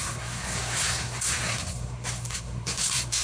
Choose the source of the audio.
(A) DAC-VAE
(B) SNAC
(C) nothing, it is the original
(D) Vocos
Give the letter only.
B